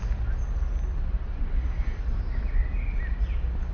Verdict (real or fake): real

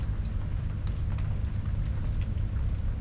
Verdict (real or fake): real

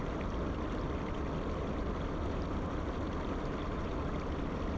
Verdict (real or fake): real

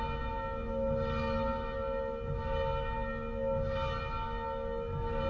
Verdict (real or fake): real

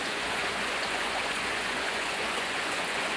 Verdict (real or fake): fake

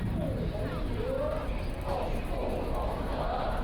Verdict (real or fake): real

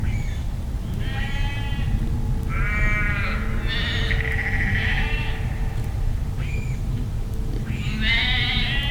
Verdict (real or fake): real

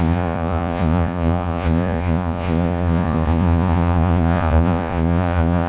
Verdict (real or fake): fake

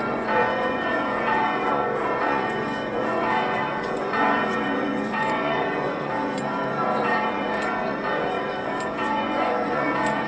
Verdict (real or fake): fake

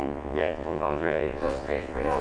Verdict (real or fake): fake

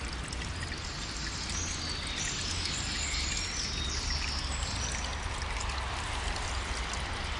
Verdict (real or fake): real